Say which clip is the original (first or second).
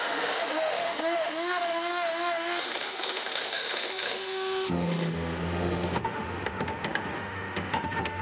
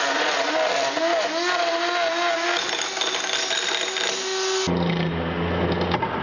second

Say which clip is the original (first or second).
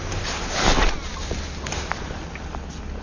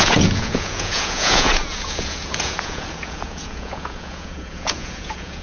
first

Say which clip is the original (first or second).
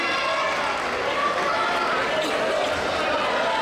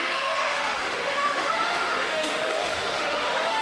first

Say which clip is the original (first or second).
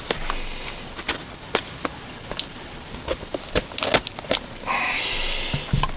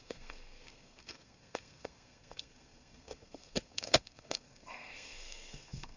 first